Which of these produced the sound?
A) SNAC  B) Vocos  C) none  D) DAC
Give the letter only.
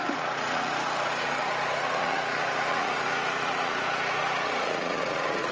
B